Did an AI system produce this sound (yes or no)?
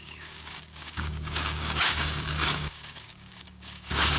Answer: yes